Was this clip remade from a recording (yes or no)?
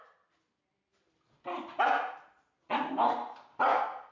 no